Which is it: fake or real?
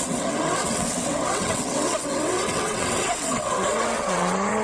fake